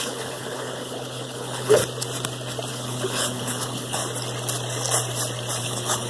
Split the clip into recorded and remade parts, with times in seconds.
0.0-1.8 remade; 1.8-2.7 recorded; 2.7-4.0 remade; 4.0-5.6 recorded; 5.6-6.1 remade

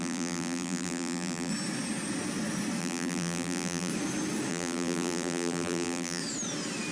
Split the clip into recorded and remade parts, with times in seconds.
0.0-1.5 remade; 1.5-2.8 recorded; 2.8-3.9 remade; 3.9-4.5 recorded; 4.5-6.2 remade; 6.2-6.9 recorded